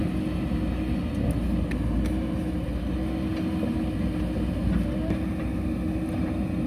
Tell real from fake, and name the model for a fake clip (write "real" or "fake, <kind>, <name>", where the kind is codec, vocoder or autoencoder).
real